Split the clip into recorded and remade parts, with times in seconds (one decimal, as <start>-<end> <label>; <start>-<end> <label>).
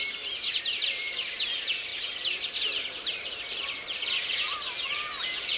0.0-5.6 recorded